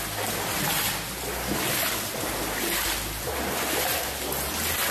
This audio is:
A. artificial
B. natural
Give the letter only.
B